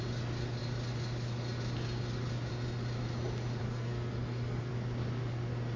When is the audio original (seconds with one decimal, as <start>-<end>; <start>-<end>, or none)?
0.0-3.6; 4.7-5.8